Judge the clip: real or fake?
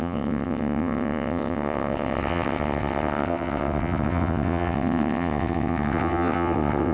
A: fake